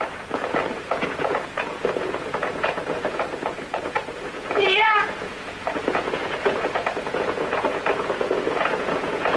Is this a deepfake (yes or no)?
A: yes